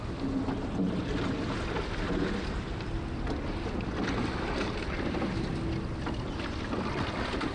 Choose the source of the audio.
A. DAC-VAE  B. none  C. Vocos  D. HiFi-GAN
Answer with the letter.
B